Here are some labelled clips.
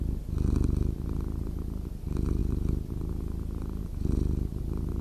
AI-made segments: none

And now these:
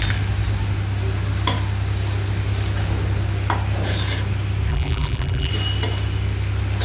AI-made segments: 4.7-5.5 (vocoder, BigVGAN v2)

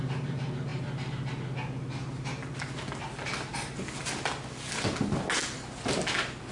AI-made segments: none